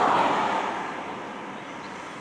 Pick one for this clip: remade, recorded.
recorded